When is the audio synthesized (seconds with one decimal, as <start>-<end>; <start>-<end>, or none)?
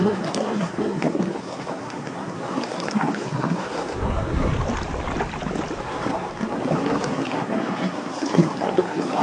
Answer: 0.0-4.5; 5.8-9.2